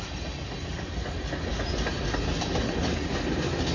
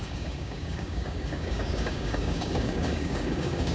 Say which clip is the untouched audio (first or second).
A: first